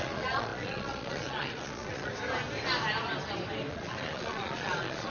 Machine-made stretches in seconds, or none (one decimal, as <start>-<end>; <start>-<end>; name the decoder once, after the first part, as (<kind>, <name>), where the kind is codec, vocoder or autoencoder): 0.0-2.1 (vocoder, Vocos); 3.7-5.1